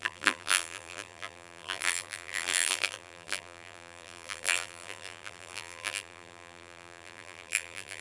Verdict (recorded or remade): remade